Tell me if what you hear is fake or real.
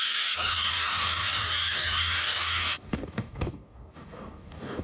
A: fake